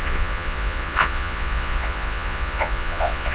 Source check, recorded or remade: remade